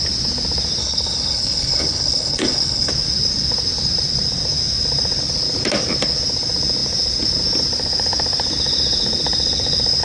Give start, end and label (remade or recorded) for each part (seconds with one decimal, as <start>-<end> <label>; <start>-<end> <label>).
0.0-0.8 recorded; 0.8-2.9 remade; 2.9-10.0 recorded